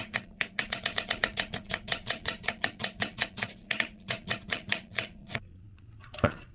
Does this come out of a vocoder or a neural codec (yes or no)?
yes